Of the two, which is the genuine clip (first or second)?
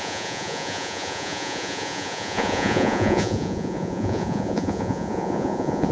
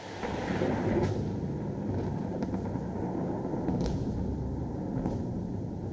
second